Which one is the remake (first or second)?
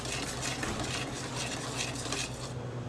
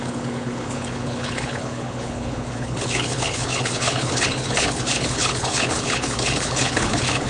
second